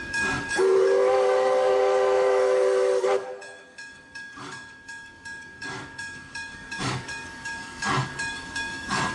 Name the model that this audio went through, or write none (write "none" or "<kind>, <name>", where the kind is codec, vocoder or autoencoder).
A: codec, DAC